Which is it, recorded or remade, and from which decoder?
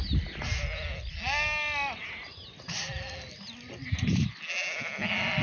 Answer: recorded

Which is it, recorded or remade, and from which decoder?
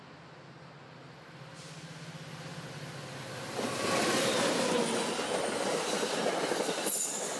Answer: recorded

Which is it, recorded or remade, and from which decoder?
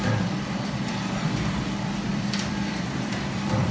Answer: remade, vocoder, BigVGAN v2